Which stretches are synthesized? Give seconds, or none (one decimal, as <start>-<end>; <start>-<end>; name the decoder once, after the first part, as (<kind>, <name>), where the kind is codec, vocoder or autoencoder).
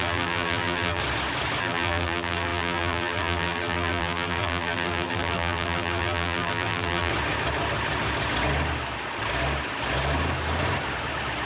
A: 0.0-1.0 (vocoder, BigVGAN v2); 1.6-7.1